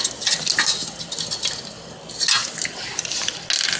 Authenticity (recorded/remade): recorded